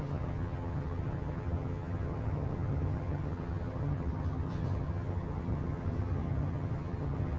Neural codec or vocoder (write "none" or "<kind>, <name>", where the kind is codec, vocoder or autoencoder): vocoder, HiFi-GAN